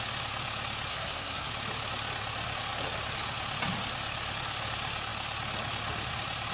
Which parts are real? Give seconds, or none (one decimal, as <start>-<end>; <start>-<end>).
0.0-0.9; 1.5-6.5